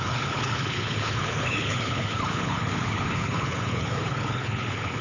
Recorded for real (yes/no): no